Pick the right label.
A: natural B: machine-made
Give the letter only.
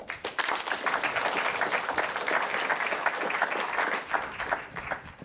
A